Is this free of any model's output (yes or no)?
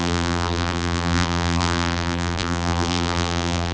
no